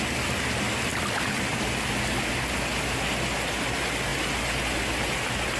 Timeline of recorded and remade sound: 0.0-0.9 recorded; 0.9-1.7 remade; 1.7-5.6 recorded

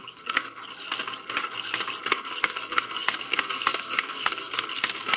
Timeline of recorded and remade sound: 0.0-0.6 remade; 0.6-2.1 recorded; 2.1-5.2 remade

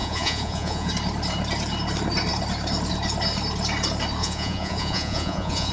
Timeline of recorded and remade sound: 0.0-0.9 remade; 0.9-4.2 recorded; 4.2-5.7 remade

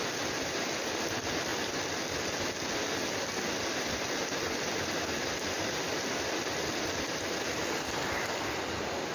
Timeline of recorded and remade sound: 0.0-9.1 recorded

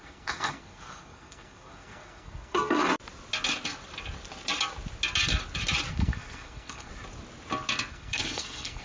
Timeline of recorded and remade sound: 0.0-2.9 remade; 2.9-5.9 recorded; 5.9-6.9 remade; 6.9-7.9 recorded; 7.9-8.8 remade

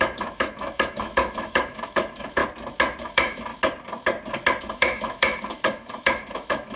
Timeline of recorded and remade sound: 0.0-2.4 remade; 2.4-3.0 recorded; 3.0-3.5 remade; 3.5-4.6 recorded; 4.6-6.8 remade